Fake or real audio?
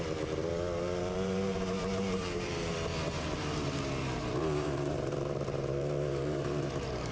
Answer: fake